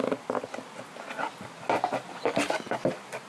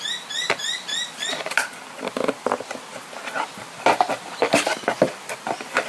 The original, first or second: first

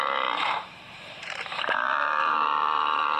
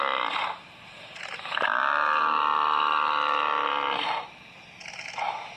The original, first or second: second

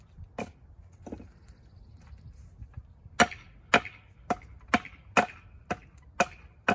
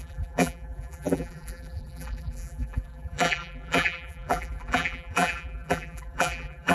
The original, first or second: first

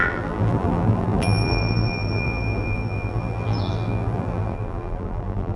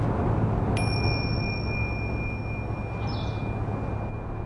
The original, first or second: second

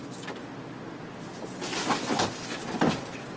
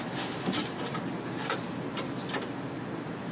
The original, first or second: first